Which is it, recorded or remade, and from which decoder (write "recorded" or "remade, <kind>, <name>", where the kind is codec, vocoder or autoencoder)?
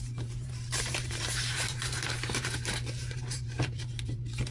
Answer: remade, vocoder, BigVGAN v2